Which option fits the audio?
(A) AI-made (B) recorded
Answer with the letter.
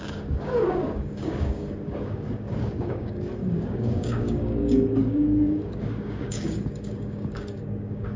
A